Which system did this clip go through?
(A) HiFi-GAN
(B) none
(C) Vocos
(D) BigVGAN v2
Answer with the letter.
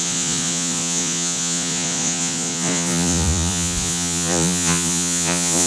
C